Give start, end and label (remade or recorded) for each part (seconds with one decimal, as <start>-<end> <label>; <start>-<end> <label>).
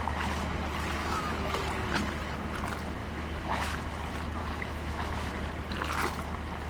0.0-1.0 recorded; 1.0-1.6 remade; 1.6-3.0 recorded; 3.0-3.6 remade; 3.6-4.4 recorded; 4.4-5.3 remade; 5.3-6.7 recorded